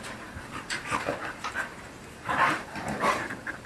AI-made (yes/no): yes